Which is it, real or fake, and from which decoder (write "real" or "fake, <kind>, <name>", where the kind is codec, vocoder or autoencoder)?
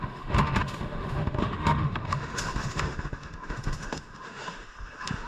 fake, autoencoder, DAC-VAE